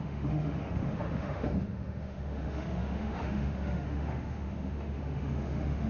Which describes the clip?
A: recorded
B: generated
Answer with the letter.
B